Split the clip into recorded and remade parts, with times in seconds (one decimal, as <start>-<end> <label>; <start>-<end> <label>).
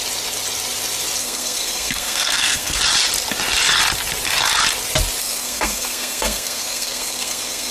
0.0-1.2 recorded; 1.2-2.8 remade; 2.8-5.2 recorded; 5.2-7.7 remade